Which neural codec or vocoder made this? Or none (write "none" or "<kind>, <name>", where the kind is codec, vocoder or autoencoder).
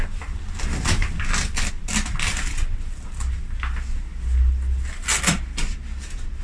none